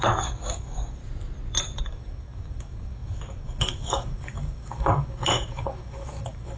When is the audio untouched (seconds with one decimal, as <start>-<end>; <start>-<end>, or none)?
1.0-1.8